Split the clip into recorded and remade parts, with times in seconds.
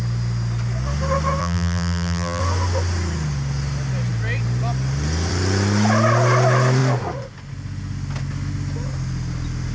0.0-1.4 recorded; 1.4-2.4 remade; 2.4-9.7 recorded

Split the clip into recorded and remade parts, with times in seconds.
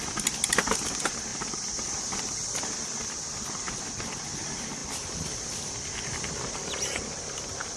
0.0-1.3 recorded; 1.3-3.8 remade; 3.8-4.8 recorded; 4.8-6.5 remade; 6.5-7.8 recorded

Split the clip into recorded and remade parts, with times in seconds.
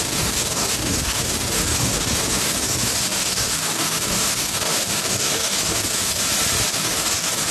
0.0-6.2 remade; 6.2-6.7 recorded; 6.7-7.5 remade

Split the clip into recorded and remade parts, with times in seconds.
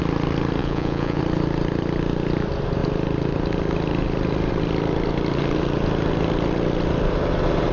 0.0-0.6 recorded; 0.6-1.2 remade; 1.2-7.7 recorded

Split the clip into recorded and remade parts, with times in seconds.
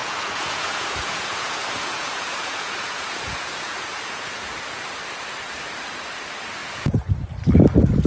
0.0-4.8 remade; 4.8-6.6 recorded; 6.6-7.1 remade; 7.1-8.1 recorded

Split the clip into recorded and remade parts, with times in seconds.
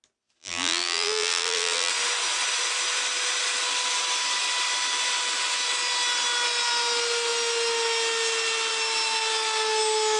0.0-0.4 recorded; 0.4-1.9 remade; 1.9-10.2 recorded